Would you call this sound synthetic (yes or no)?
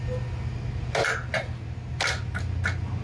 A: no